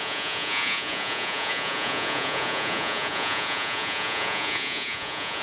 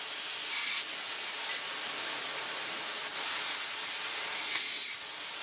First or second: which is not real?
first